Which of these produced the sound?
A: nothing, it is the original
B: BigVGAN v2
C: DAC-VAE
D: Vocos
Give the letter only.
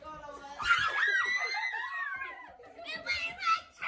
A